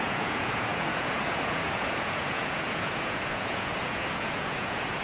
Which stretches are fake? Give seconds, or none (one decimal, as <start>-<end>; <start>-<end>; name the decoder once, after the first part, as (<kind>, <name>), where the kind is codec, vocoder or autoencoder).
0.0-5.0 (vocoder, Vocos)